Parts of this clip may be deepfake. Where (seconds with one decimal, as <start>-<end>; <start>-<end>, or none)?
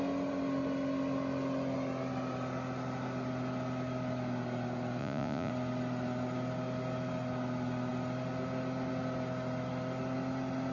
5.0-5.5